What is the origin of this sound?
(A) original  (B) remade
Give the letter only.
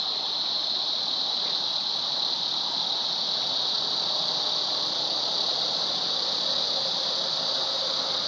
A